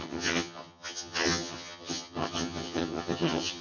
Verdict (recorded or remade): remade